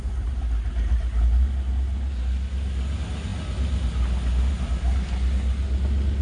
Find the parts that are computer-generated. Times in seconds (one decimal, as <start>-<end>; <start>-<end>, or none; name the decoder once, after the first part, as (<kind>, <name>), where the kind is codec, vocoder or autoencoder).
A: none